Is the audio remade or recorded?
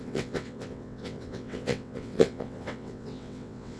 remade